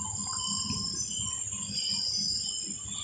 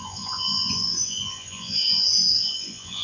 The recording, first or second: first